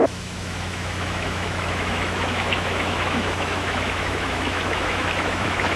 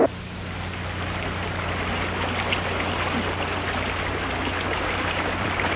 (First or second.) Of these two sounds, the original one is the second